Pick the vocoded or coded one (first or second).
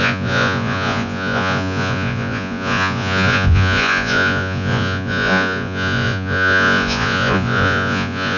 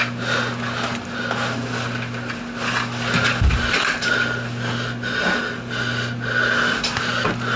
first